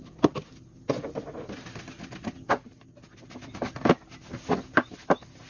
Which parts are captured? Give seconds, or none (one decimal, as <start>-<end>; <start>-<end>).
0.0-5.5